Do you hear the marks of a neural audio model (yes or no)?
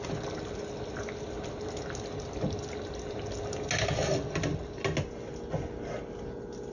no